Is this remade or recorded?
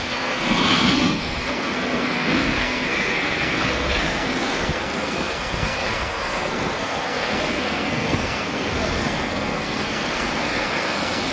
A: remade